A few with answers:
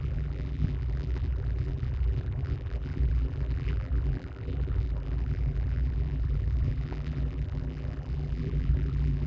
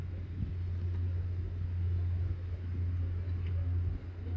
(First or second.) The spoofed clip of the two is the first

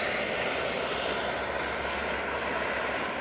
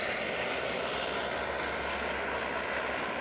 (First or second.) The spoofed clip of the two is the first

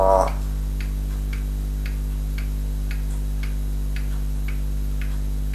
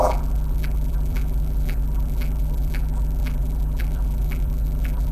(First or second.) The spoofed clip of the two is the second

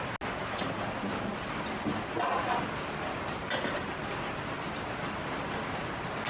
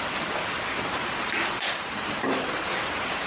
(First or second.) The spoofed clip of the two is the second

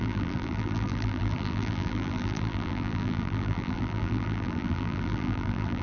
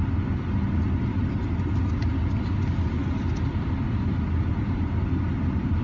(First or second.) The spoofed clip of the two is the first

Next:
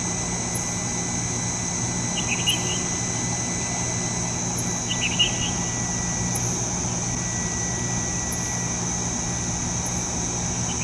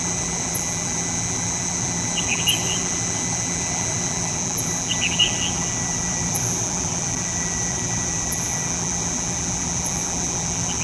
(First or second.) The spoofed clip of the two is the second